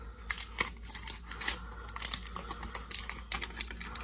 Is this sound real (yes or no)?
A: yes